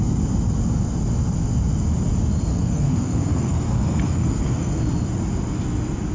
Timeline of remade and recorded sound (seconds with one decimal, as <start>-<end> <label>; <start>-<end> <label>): 0.0-2.5 recorded; 2.5-4.8 remade; 4.8-6.1 recorded